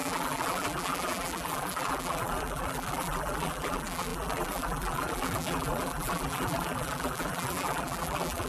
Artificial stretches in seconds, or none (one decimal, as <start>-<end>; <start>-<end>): 0.0-8.5